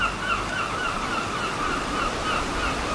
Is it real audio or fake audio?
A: real